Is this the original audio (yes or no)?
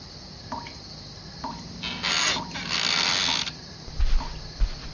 yes